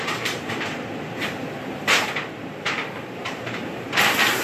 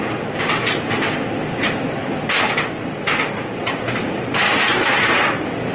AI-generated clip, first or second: first